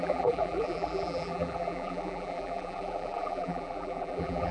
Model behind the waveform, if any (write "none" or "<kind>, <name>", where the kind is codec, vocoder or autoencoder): vocoder, BigVGAN v2